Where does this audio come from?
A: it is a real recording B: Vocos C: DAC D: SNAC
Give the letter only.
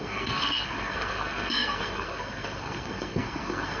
D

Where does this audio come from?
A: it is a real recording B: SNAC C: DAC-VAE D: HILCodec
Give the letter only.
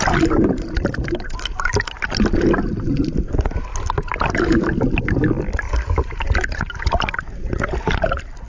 A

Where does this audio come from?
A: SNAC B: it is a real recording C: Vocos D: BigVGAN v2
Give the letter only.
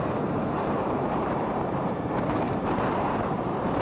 D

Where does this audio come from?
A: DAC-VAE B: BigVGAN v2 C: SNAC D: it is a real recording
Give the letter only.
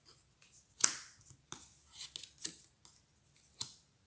D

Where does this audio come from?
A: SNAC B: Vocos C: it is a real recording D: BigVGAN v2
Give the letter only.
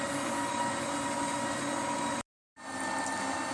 C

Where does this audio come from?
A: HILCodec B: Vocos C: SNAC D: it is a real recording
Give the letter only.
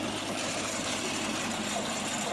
D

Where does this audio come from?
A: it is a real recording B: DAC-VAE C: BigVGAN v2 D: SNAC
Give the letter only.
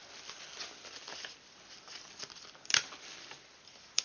A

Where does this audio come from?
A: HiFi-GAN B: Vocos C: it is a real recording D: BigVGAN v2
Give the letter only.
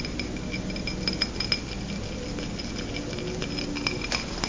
C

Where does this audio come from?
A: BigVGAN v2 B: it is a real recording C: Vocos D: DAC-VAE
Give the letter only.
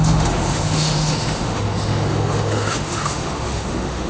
D